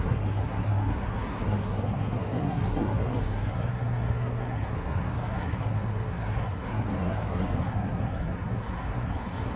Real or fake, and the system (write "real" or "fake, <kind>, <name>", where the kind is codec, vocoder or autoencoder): fake, codec, SNAC